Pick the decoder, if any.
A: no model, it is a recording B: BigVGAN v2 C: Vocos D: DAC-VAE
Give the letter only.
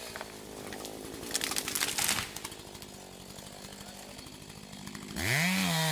A